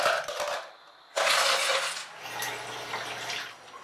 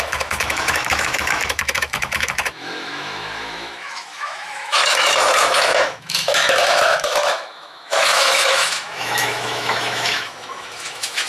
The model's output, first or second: second